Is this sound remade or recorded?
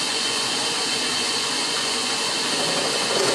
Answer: remade